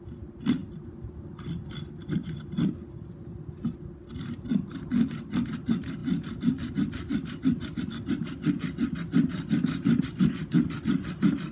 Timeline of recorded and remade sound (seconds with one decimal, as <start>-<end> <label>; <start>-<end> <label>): 0.0-11.5 recorded